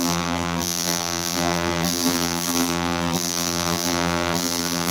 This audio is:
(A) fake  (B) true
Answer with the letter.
A